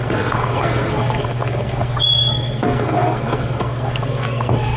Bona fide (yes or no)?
no